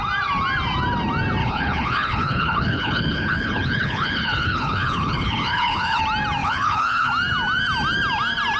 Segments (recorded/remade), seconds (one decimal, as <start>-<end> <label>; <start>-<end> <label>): 0.0-1.4 recorded; 1.4-6.0 remade; 6.0-6.4 recorded; 6.4-7.1 remade; 7.1-8.6 recorded